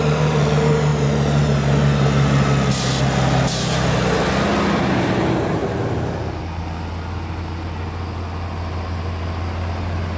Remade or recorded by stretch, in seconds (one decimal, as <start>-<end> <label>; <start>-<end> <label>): 0.0-10.2 recorded